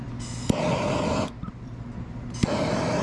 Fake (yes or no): no